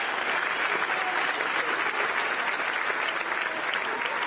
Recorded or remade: recorded